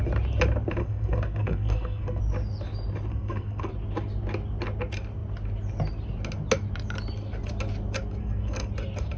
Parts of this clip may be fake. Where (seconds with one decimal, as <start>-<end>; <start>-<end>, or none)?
0.8-2.2; 3.1-3.7; 8.2-8.7